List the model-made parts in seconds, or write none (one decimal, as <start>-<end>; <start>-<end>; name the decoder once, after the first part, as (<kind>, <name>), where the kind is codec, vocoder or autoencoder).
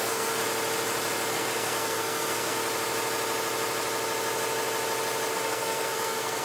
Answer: 0.0-0.4 (codec, SNAC); 1.3-2.6; 5.3-6.4